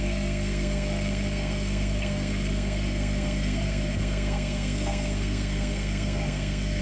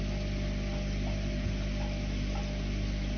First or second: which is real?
second